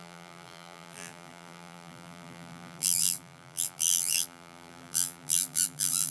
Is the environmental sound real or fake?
fake